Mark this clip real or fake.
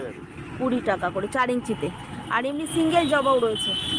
real